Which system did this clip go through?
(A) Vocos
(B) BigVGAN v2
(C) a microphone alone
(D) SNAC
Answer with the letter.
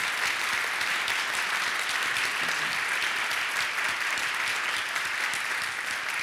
C